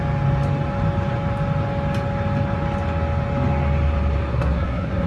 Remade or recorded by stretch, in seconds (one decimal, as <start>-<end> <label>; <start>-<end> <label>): 0.0-4.3 recorded; 4.3-5.1 remade